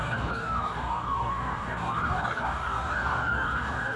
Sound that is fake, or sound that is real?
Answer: fake